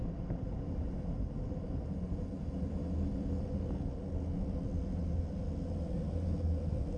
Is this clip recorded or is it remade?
recorded